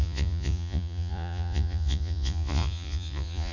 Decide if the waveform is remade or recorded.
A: remade